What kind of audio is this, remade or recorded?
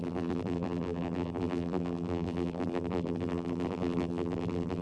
remade